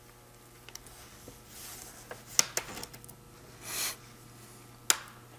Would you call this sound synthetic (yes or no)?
no